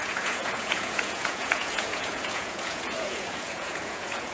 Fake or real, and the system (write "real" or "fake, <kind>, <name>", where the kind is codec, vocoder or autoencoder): fake, vocoder, Vocos